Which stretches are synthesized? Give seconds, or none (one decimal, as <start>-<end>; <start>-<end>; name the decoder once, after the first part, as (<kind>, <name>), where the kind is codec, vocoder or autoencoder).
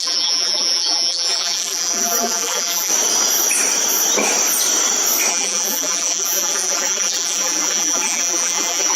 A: 0.0-2.9 (vocoder, BigVGAN v2); 5.3-9.0